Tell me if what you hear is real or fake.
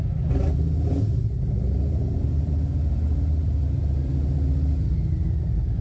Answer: real